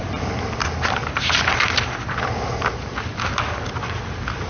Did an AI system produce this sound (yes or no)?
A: no